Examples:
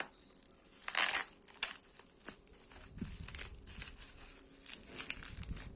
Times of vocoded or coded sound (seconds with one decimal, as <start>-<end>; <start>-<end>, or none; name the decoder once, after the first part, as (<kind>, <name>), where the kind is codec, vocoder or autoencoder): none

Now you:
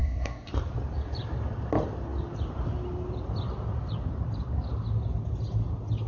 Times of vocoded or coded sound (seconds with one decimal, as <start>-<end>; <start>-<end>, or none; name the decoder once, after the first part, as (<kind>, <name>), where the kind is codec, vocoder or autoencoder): 0.0-0.5 (codec, SNAC)

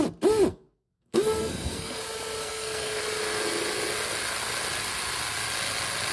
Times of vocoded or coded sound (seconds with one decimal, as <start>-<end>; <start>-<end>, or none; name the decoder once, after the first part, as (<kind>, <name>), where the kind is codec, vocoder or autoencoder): 0.5-2.0 (codec, SNAC); 2.4-3.0

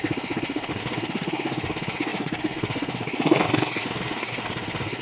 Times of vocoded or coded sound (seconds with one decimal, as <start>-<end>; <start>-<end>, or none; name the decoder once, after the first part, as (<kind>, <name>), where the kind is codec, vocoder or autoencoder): 0.0-5.0 (codec, SNAC)

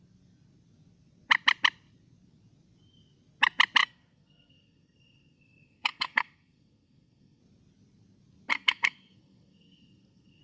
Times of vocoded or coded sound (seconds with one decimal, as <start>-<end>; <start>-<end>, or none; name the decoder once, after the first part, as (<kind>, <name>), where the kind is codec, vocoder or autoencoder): 3.8-7.4 (codec, SNAC); 8.5-10.4

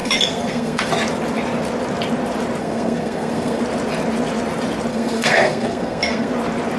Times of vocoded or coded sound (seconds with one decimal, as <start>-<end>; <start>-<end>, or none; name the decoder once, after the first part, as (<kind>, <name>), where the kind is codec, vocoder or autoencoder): 0.0-0.9 (codec, SNAC); 2.6-3.6; 4.9-6.3

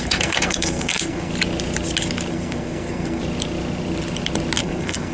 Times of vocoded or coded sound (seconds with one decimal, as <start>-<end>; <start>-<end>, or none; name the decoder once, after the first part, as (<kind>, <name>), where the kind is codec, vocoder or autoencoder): 0.0-1.3 (codec, SNAC); 2.3-3.2; 4.6-5.1